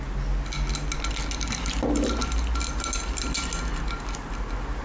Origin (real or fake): real